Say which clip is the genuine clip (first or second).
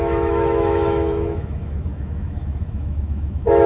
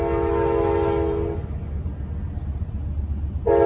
second